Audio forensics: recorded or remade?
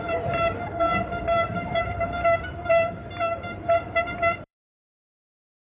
remade